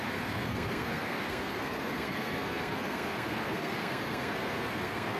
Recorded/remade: remade